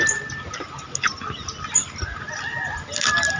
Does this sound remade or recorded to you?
recorded